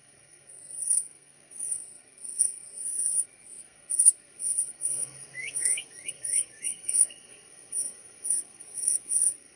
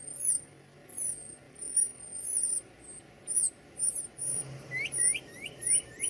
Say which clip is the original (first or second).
second